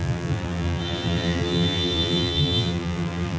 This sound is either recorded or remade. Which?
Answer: remade